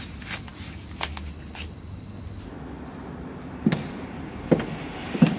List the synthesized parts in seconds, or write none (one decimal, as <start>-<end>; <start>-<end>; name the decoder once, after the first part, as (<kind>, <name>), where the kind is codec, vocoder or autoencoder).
none